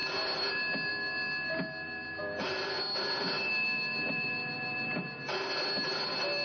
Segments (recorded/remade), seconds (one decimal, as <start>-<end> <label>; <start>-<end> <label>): 0.0-6.4 recorded